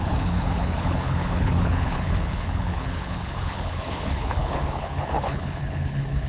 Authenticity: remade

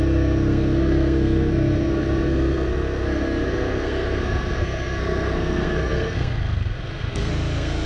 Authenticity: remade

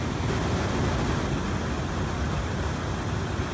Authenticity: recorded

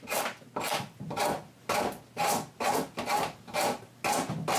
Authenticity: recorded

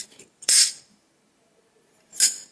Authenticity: recorded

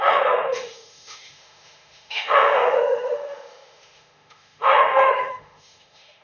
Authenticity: remade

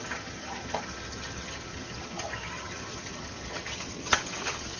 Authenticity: remade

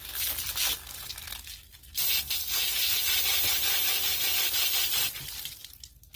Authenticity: recorded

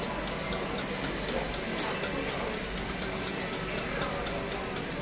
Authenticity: recorded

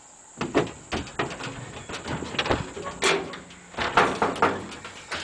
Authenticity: recorded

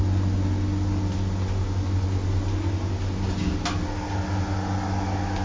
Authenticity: recorded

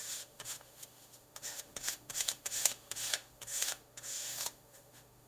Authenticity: remade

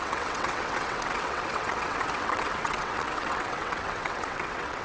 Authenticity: remade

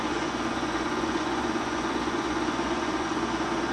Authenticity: remade